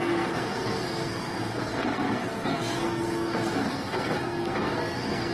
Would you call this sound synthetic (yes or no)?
yes